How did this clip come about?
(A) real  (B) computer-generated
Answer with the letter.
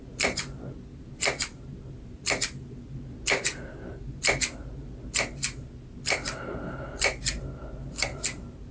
A